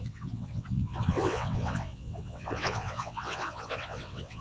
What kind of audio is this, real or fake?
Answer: fake